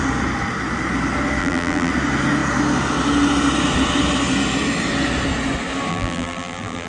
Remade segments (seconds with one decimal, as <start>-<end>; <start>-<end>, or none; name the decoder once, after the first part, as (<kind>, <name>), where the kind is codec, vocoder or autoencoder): 1.4-1.9 (vocoder, BigVGAN v2); 5.9-6.9